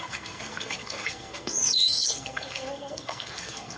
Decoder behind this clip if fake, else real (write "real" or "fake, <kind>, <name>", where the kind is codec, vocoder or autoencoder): fake, codec, SNAC